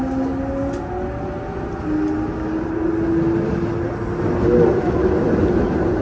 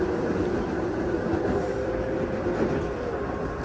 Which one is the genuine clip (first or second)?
first